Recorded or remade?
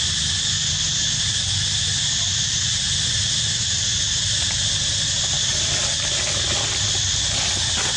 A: recorded